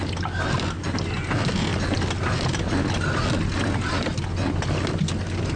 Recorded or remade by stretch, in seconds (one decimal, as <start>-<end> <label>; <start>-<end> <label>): 0.0-5.6 recorded